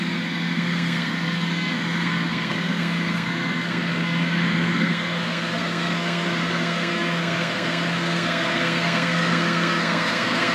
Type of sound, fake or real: fake